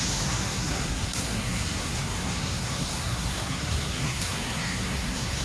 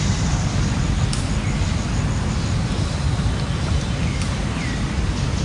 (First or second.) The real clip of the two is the second